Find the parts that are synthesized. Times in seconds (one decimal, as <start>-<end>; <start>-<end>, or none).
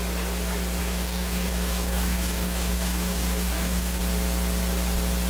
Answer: 0.8-4.0